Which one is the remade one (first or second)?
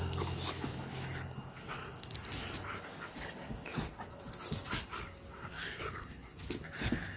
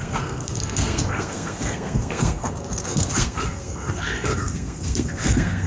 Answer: second